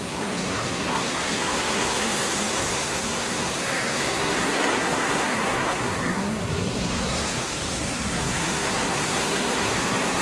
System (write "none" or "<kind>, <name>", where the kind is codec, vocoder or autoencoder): codec, SNAC